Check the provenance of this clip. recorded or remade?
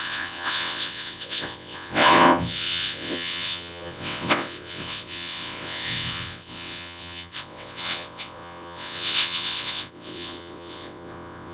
remade